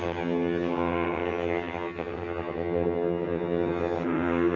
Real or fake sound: fake